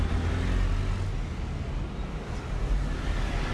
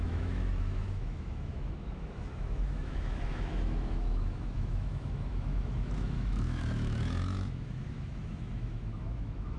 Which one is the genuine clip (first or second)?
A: first